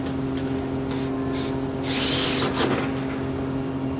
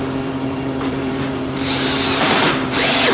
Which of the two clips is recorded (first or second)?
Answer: first